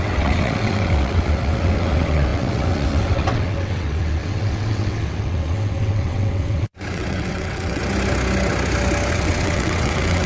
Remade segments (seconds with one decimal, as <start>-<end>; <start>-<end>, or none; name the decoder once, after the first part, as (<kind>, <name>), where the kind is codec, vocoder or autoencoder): 0.0-7.8 (vocoder, WaveNeXt); 9.1-10.3